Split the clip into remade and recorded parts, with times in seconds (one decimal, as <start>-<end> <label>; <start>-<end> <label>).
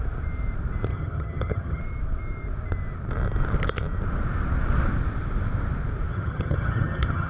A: 0.0-0.9 recorded; 0.9-1.8 remade; 1.8-6.1 recorded; 6.1-7.3 remade